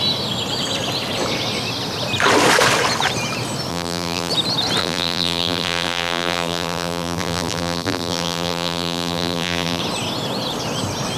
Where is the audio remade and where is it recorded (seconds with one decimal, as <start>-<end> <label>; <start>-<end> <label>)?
0.0-3.7 recorded; 3.7-4.3 remade; 4.3-4.8 recorded; 4.8-9.8 remade; 9.8-11.2 recorded